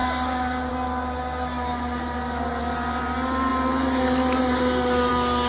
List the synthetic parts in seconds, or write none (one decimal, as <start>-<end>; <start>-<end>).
none